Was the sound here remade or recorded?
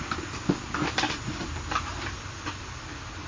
recorded